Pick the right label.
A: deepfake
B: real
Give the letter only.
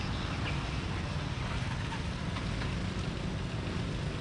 B